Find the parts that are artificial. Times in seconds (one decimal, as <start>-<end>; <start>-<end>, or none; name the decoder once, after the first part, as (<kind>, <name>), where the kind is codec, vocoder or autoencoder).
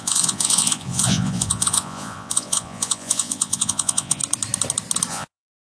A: 0.0-4.2 (vocoder, Vocos); 5.1-5.8